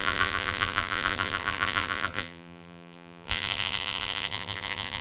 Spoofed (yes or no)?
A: yes